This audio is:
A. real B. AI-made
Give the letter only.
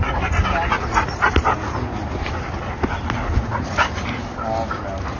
A